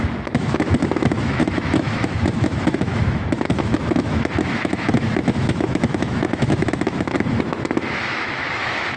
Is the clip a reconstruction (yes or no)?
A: yes